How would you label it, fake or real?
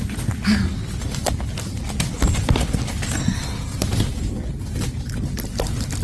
real